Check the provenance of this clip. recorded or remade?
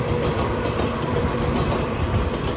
remade